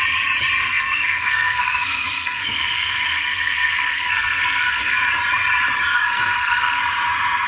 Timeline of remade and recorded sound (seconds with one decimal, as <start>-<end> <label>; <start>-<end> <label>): 0.0-0.6 recorded; 0.6-5.1 remade; 5.1-5.9 recorded; 5.9-6.8 remade; 6.8-7.5 recorded